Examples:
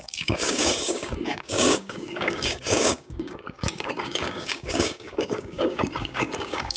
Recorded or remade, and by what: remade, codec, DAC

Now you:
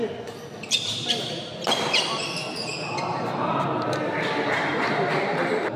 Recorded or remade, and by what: recorded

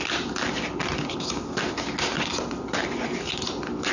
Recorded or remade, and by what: recorded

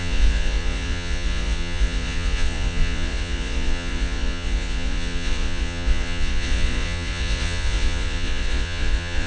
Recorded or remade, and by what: remade, vocoder, Vocos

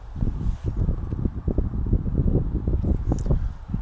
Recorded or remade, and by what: recorded